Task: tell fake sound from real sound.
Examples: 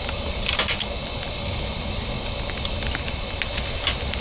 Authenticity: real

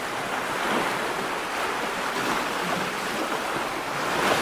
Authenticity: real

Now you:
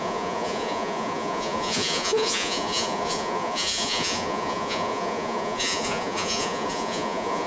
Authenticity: fake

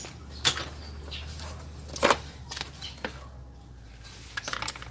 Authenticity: real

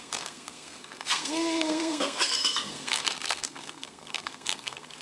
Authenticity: fake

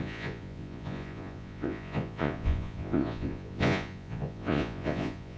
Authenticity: fake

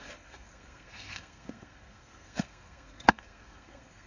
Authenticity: fake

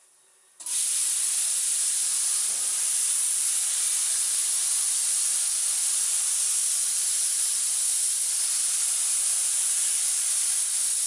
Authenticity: fake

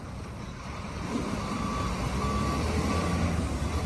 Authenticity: real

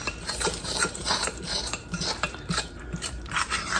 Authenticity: fake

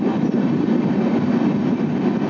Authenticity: real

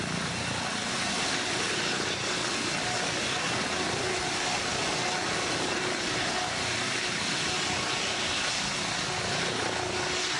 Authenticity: real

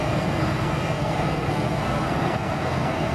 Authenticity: fake